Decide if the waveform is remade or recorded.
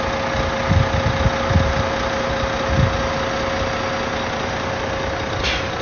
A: recorded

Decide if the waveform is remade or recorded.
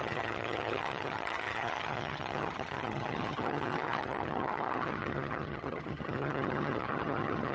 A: remade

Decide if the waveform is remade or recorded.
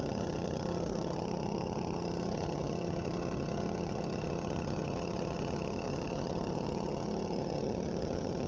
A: remade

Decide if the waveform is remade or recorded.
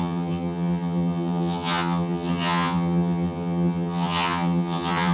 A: remade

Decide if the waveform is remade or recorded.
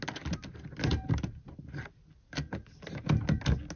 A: recorded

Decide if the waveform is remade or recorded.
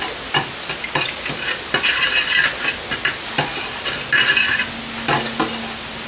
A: recorded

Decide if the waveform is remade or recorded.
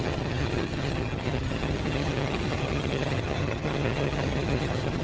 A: remade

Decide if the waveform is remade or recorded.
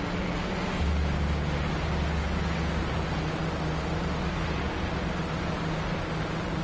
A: recorded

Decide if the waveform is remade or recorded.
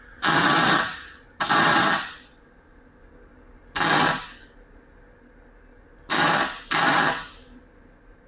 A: recorded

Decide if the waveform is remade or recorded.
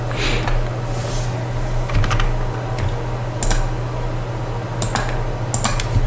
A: recorded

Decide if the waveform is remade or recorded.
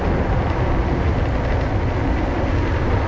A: recorded